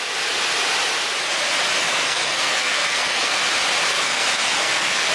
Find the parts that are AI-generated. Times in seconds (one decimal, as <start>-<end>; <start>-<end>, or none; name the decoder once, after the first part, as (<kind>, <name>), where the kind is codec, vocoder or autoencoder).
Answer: 1.8-3.4 (codec, SNAC); 3.9-5.1